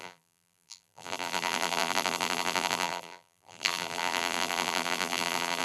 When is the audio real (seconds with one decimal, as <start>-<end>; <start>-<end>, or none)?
none